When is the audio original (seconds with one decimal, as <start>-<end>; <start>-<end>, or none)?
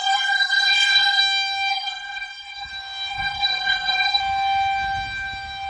1.2-1.7; 2.7-3.1; 4.2-5.7